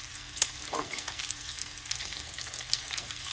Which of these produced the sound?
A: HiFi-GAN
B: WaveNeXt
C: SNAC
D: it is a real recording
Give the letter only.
C